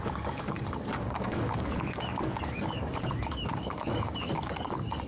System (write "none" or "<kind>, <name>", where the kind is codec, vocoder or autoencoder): codec, DAC